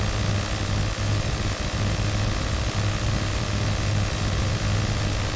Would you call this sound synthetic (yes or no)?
no